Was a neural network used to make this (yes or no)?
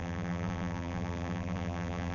yes